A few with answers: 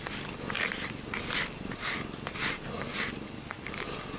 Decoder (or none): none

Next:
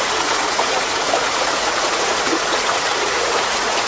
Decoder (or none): vocoder, Vocos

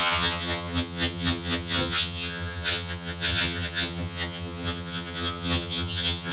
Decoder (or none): vocoder, HiFi-GAN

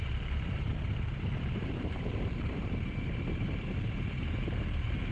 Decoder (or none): vocoder, BigVGAN v2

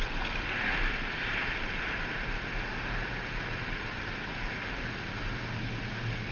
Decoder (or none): none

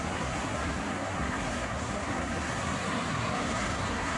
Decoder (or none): codec, SNAC